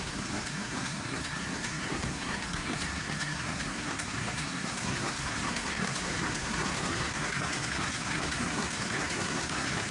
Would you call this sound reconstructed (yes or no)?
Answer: yes